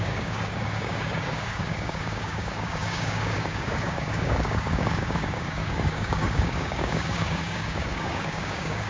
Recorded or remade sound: remade